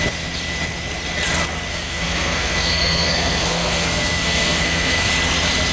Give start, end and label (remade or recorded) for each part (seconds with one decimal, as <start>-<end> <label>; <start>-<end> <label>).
0.0-1.7 recorded; 1.7-5.1 remade; 5.1-5.7 recorded